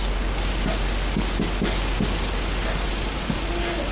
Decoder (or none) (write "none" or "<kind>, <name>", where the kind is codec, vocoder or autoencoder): none